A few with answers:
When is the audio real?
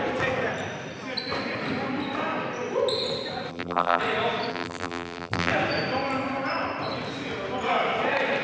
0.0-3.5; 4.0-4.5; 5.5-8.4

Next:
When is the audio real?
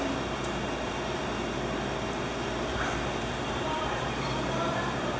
1.3-3.1